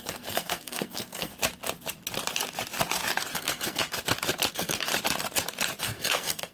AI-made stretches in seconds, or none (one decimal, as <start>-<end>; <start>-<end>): 0.0-1.3; 3.3-3.8; 4.5-4.9; 5.8-6.5